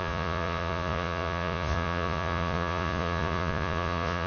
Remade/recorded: remade